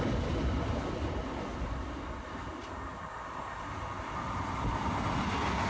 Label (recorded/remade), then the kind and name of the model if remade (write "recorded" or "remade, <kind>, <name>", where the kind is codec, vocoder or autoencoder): recorded